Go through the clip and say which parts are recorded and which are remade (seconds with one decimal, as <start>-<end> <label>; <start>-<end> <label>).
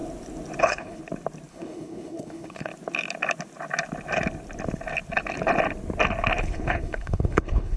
0.0-0.6 recorded; 0.6-1.0 remade; 1.0-1.5 recorded; 1.5-2.7 remade; 2.7-6.4 recorded; 6.4-7.8 remade